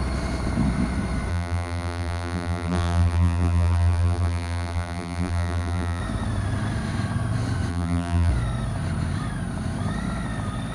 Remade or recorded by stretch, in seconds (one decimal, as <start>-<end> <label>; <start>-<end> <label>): 0.0-1.3 recorded; 1.3-6.0 remade; 6.0-7.7 recorded; 7.7-8.3 remade; 8.3-10.7 recorded